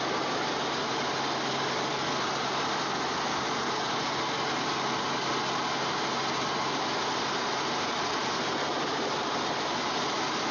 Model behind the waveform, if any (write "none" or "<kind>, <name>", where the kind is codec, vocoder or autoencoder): none